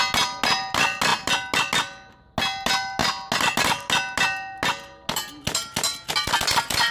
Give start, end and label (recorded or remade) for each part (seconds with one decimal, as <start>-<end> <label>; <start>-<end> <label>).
0.0-6.9 recorded